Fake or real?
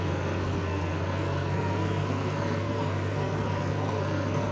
fake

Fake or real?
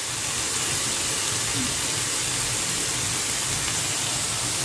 real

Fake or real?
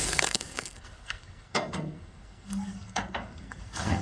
fake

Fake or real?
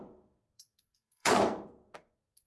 fake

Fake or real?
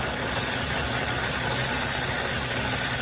real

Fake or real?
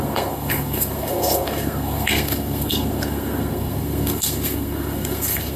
fake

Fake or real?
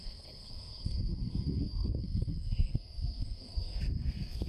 fake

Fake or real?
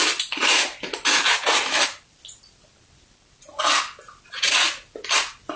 real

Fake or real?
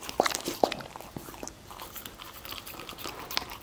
real